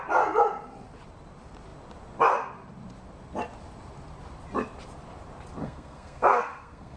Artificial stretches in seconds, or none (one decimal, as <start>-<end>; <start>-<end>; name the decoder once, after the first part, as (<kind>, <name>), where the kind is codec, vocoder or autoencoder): 5.6-7.0 (codec, SNAC)